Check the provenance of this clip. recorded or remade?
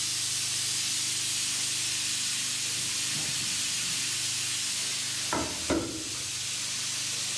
recorded